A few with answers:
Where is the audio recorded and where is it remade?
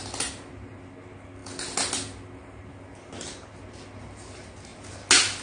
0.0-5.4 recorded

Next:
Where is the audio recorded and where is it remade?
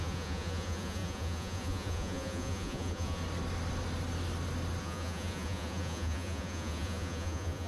0.0-3.2 remade; 3.2-4.8 recorded; 4.8-7.7 remade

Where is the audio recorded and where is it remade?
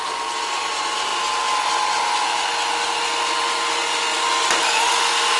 0.0-5.4 recorded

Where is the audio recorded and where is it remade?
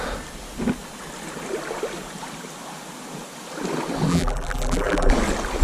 0.0-4.1 recorded; 4.1-5.1 remade; 5.1-5.6 recorded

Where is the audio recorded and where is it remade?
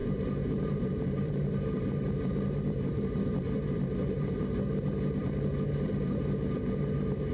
0.0-4.4 remade; 4.4-5.2 recorded; 5.2-6.2 remade; 6.2-7.3 recorded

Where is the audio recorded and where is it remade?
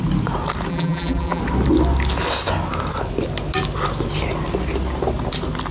0.0-0.7 recorded; 0.7-1.4 remade; 1.4-5.7 recorded